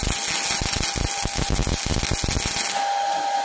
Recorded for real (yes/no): yes